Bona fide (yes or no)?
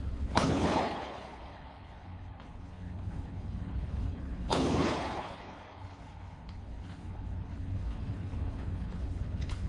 no